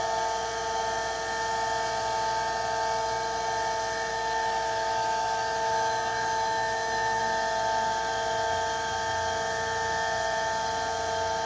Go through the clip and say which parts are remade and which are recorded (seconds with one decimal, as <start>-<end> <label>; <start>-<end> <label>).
0.0-4.1 recorded; 4.1-7.2 remade; 7.2-11.5 recorded